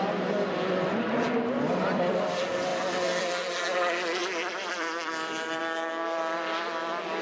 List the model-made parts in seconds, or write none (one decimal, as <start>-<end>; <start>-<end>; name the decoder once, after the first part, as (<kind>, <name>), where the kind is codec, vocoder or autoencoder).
4.2-5.6 (vocoder, BigVGAN v2)